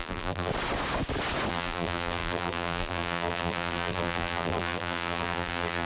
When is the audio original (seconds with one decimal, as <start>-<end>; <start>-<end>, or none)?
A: 0.5-1.5